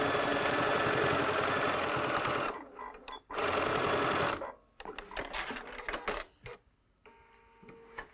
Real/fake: real